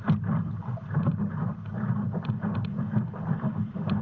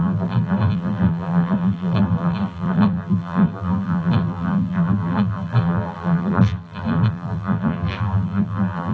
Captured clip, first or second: first